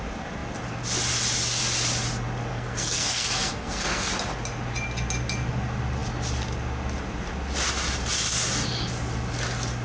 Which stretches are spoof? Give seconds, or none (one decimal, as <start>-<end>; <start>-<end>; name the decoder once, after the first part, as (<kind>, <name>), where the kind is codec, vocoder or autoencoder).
2.5-4.1 (codec, SNAC)